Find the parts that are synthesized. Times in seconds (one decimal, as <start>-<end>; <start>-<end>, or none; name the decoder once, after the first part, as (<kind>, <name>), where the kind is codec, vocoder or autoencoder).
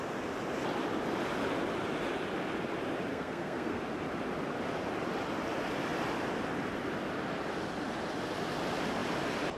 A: 3.1-3.8 (codec, SNAC)